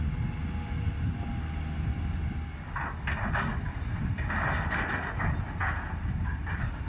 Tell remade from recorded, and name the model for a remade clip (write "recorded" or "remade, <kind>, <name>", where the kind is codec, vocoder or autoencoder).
recorded